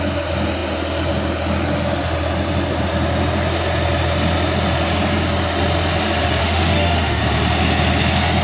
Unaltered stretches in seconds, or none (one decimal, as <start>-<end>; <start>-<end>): 0.0-6.4; 7.2-8.4